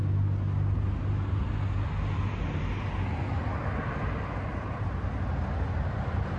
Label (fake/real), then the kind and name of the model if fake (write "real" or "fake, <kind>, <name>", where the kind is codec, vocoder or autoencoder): real